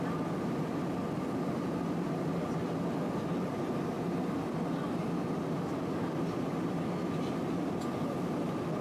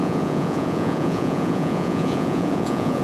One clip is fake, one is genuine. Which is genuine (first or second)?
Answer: first